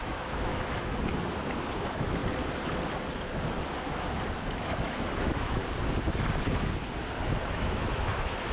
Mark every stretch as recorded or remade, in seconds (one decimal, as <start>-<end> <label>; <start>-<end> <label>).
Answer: 0.0-0.5 remade; 0.5-1.8 recorded; 1.8-2.2 remade; 2.2-4.5 recorded; 4.5-5.6 remade; 5.6-7.5 recorded; 7.5-8.5 remade